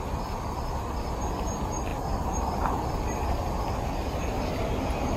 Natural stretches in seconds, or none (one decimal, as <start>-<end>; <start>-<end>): 0.0-5.2